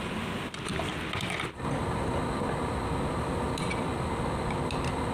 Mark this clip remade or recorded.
recorded